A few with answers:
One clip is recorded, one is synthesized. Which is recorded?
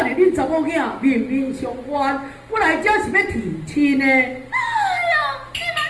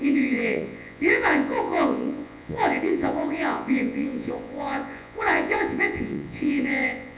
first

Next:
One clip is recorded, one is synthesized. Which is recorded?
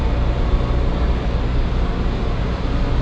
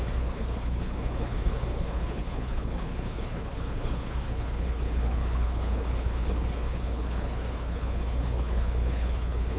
first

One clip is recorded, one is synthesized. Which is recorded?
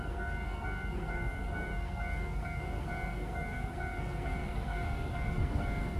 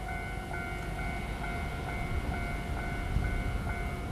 second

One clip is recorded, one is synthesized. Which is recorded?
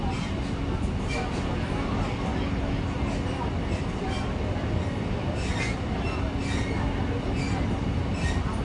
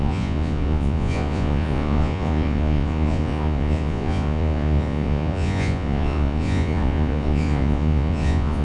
first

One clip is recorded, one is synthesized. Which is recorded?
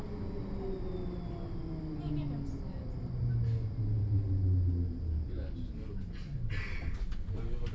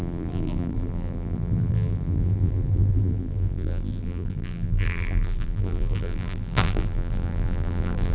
first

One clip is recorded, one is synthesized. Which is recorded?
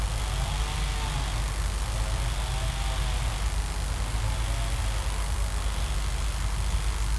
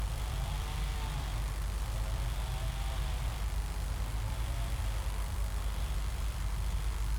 first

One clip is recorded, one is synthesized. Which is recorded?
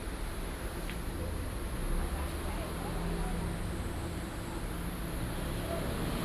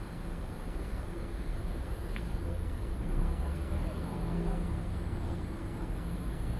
first